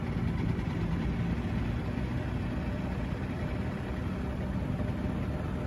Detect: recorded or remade recorded